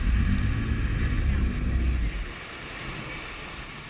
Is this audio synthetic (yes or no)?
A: no